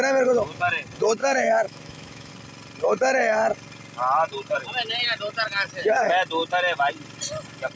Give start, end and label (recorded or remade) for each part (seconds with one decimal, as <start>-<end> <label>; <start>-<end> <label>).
0.0-1.2 recorded; 1.2-2.3 remade; 2.3-7.8 recorded